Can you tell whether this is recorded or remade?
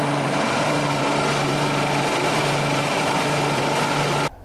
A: recorded